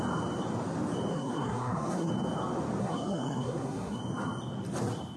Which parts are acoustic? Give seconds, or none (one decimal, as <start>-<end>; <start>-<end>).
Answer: 0.0-1.1; 2.1-2.8; 4.0-5.2